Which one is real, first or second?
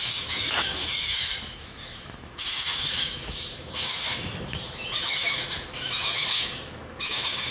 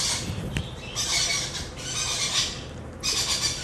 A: second